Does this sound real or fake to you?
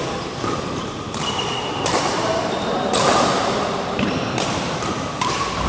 fake